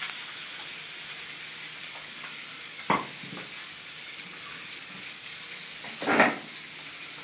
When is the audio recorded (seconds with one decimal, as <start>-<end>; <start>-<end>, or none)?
0.0-1.8; 3.0-3.6; 5.7-7.2